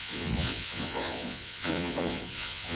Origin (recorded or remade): remade